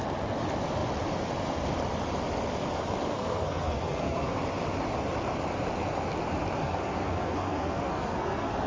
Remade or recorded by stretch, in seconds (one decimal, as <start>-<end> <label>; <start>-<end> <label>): 0.0-3.1 recorded; 3.1-4.4 remade; 4.4-6.6 recorded; 6.6-8.7 remade